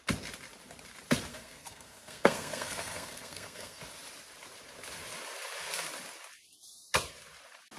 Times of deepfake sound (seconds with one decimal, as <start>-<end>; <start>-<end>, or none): 1.3-3.8